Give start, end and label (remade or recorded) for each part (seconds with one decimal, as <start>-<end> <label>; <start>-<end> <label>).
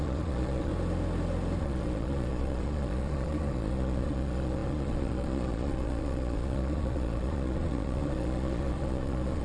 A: 0.0-0.7 remade; 0.7-1.6 recorded; 1.6-9.4 remade